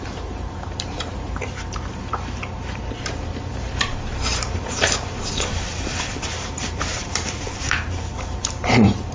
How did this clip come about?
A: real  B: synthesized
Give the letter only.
B